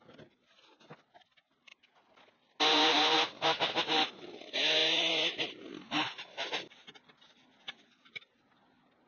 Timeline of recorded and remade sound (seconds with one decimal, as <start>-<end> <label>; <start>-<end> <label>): 0.0-9.1 recorded